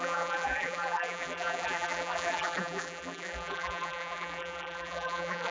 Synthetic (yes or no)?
yes